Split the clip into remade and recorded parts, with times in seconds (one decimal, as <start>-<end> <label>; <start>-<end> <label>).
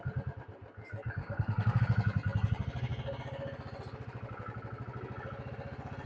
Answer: 0.0-1.2 recorded; 1.2-1.8 remade; 1.8-6.1 recorded